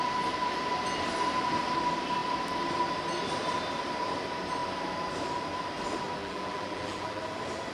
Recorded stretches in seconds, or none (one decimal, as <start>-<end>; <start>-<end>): 0.0-6.2; 7.2-7.7